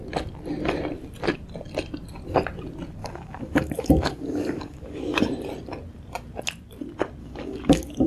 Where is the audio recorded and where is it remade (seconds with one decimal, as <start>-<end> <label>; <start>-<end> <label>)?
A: 0.0-3.0 recorded; 3.0-5.2 remade; 5.2-7.2 recorded; 7.2-8.1 remade